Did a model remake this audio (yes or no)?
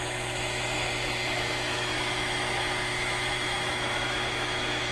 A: yes